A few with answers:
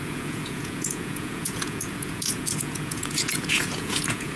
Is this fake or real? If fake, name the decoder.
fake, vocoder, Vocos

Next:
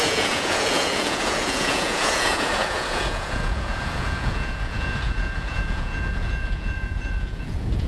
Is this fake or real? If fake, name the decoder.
fake, vocoder, Vocos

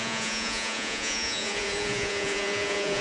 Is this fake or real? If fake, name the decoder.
fake, vocoder, Vocos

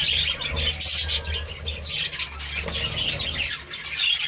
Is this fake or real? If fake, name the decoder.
real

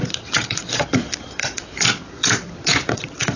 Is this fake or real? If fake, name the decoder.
fake, vocoder, Vocos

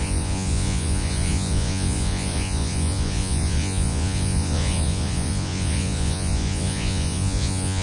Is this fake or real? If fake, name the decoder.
fake, vocoder, Vocos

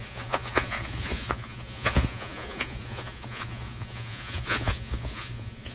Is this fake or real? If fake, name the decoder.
fake, vocoder, Vocos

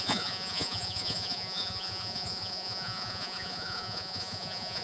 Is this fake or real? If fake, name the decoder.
fake, vocoder, Vocos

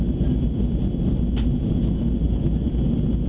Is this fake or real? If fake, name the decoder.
real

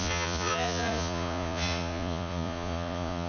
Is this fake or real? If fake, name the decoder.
fake, vocoder, Vocos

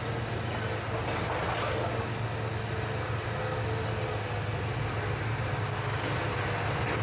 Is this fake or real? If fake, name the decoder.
real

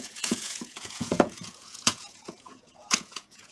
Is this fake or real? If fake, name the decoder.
fake, vocoder, Vocos